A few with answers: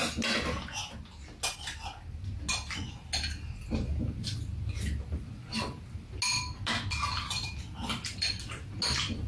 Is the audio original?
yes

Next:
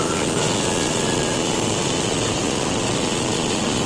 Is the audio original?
no